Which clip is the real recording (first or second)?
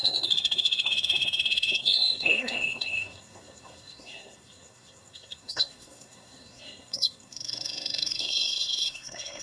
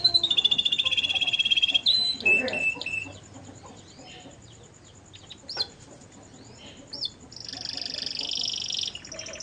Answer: second